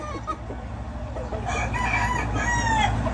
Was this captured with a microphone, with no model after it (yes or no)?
yes